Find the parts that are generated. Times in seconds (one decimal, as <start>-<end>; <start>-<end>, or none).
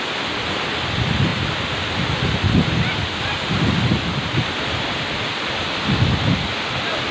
none